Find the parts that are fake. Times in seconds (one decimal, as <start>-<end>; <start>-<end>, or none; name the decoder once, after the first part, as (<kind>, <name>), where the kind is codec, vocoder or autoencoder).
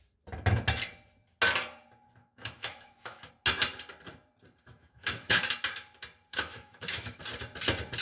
2.2-3.3 (autoencoder, DAC-VAE); 4.7-5.4; 6.3-7.2